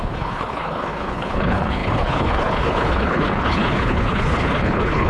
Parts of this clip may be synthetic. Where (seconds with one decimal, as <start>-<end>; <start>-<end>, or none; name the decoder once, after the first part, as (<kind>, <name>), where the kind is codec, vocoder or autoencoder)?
0.0-5.1 (codec, HILCodec)